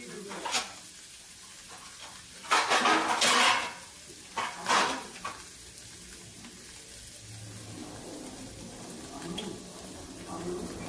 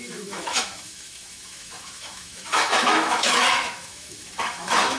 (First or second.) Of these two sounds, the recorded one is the first